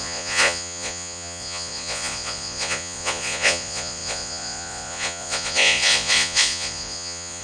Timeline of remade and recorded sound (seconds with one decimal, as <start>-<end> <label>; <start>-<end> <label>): 0.0-7.4 remade